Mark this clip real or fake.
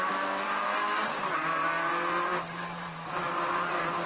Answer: fake